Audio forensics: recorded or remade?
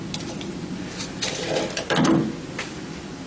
recorded